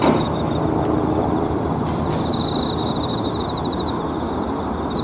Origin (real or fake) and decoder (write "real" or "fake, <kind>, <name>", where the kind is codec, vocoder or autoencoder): real